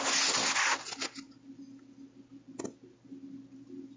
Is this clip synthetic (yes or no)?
no